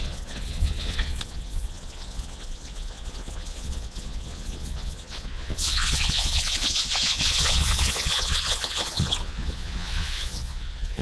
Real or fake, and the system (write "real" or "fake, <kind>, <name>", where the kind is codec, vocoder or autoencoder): fake, vocoder, Vocos